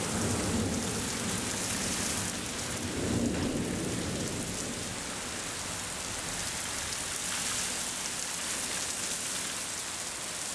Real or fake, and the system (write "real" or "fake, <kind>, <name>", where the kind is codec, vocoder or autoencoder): real